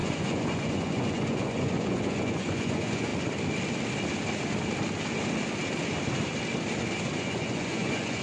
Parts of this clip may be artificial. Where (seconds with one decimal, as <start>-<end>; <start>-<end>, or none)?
0.0-3.1; 7.1-8.2